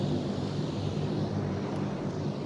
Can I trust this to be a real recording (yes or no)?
yes